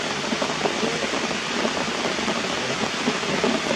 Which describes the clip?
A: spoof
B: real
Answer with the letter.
B